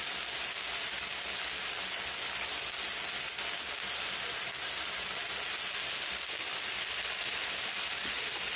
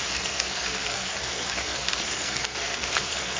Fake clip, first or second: second